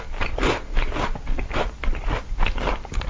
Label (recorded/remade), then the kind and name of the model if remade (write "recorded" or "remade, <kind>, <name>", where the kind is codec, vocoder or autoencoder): recorded